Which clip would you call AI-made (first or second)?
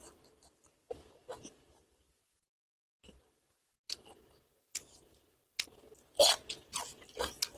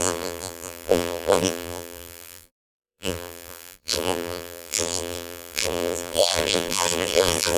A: second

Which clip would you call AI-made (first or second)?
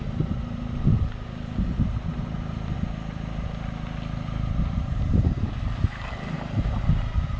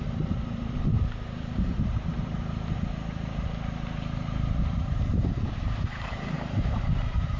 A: second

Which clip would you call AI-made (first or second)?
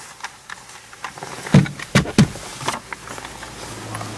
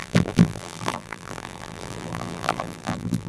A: second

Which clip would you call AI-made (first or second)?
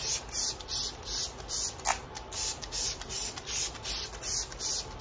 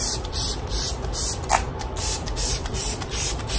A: second